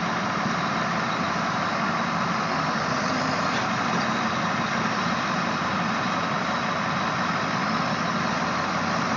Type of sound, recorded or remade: recorded